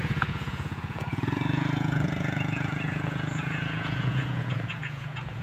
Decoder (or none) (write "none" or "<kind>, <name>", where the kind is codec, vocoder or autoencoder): vocoder, Vocos